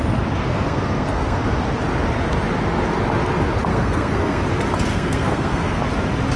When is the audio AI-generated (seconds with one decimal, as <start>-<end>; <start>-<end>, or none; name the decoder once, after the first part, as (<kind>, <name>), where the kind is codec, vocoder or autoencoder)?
0.5-1.4 (codec, SNAC); 3.7-4.4; 4.9-5.8